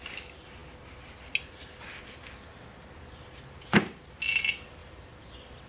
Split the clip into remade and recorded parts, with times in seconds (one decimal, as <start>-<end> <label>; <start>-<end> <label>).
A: 0.0-5.7 recorded